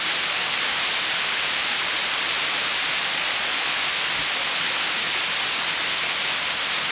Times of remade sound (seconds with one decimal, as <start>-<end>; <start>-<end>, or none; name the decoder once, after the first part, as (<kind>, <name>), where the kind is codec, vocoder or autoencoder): 0.0-3.5 (vocoder, BigVGAN v2); 4.8-6.9